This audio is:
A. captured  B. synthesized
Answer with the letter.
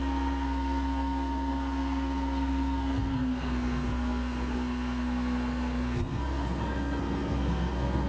B